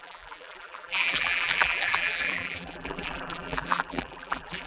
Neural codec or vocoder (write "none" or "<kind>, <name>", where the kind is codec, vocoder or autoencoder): vocoder, BigVGAN v2